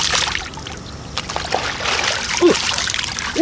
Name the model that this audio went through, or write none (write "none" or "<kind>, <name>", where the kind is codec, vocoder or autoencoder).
none